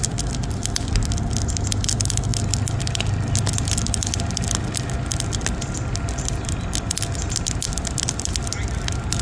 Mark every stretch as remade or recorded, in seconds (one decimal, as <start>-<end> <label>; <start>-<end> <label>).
0.0-9.2 recorded